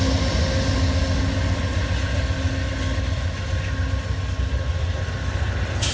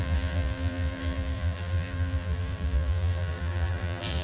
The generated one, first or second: second